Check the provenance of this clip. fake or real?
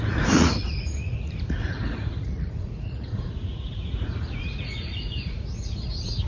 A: fake